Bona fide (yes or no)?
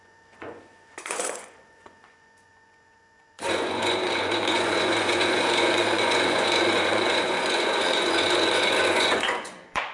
no